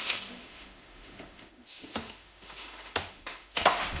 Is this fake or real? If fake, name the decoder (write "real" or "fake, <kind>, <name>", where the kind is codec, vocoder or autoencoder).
fake, autoencoder, DAC-VAE